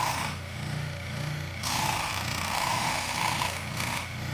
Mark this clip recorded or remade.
remade